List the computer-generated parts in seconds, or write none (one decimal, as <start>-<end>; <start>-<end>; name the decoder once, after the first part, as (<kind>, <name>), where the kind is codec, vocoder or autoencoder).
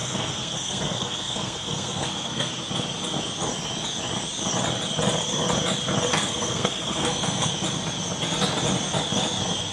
0.0-2.5 (codec, SNAC); 6.1-7.5